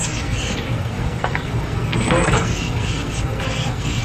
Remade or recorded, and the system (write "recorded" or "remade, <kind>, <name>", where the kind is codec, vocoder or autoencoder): remade, codec, SNAC